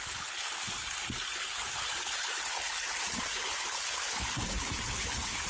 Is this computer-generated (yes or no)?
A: yes